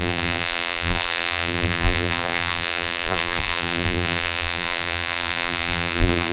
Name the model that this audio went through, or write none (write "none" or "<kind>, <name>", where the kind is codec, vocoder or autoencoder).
vocoder, BigVGAN v2